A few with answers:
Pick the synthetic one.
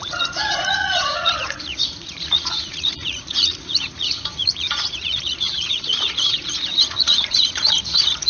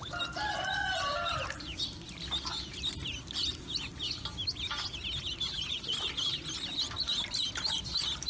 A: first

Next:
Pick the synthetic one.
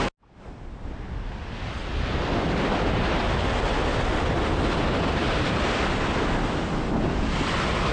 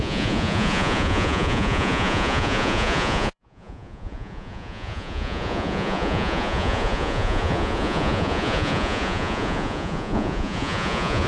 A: second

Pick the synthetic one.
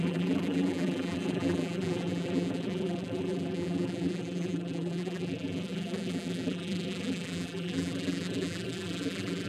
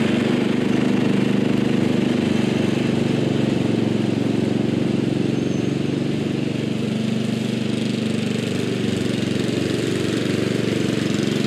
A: first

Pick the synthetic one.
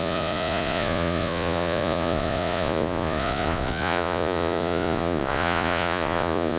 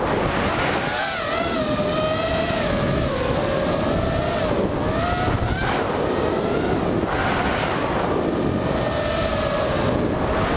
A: first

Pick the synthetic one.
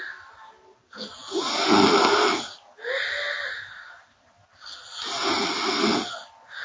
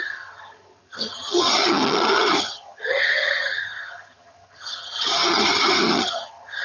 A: second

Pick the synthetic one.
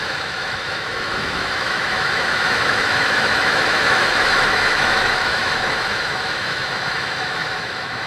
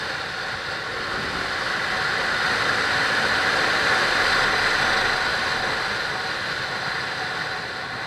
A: first